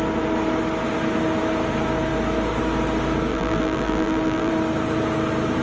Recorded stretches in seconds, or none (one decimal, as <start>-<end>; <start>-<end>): 0.0-3.3; 4.5-5.6